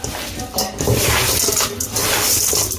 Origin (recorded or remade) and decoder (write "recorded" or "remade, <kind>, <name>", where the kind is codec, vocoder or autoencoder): recorded